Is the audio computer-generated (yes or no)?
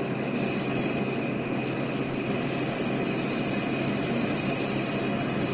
no